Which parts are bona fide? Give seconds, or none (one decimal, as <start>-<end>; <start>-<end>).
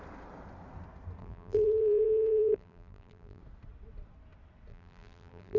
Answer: 0.0-1.2; 3.4-4.7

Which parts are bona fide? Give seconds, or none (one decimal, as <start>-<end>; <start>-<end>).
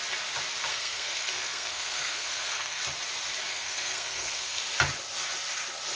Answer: 0.0-0.7; 2.8-3.5; 4.6-5.9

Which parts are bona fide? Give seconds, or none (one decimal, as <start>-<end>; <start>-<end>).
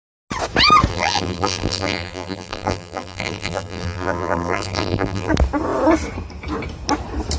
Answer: 0.0-0.9; 5.3-7.4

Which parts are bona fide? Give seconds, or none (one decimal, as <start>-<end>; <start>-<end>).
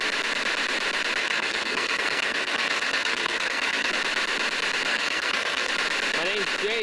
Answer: 0.0-1.2; 3.9-4.9; 5.7-6.8